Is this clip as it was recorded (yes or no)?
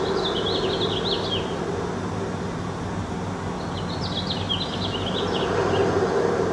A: yes